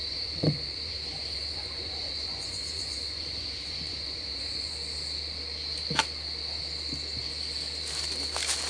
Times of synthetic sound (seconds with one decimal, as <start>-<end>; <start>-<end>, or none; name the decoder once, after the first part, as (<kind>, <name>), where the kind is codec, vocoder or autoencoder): 0.0-4.7 (vocoder, Vocos)